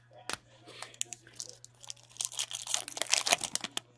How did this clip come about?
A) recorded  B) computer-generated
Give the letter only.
A